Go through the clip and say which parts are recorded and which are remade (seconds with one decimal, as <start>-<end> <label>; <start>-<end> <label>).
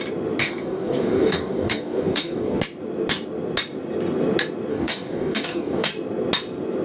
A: 0.0-0.4 recorded; 0.4-2.6 remade; 2.6-4.7 recorded; 4.7-5.9 remade; 5.9-6.8 recorded